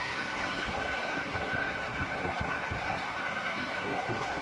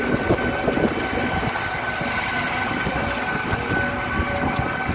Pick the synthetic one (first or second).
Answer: first